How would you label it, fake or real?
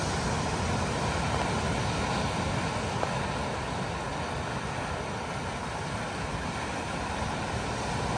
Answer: real